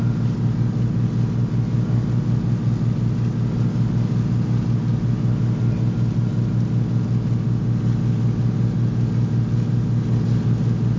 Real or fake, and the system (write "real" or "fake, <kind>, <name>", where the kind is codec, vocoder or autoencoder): real